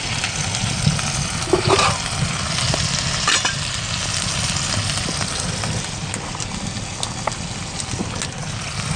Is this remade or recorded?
recorded